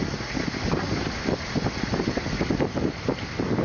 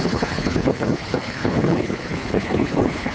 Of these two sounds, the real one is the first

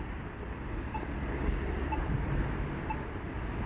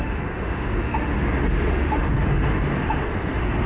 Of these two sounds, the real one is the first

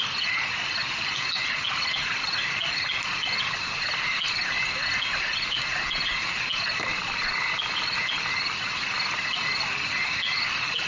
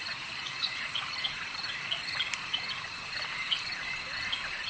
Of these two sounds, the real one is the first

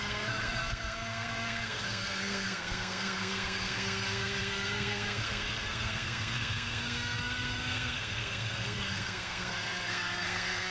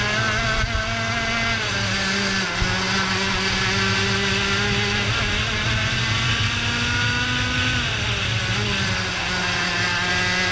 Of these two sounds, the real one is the second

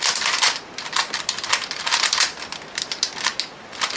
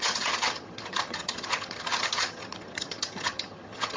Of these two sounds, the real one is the first